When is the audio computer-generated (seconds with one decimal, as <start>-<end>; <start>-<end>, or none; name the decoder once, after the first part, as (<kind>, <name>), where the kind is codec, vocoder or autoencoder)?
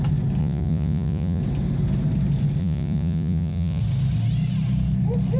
0.4-1.4 (vocoder, Vocos); 2.6-3.8